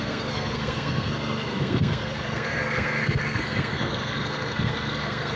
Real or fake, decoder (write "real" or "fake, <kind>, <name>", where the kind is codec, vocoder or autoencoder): fake, codec, SNAC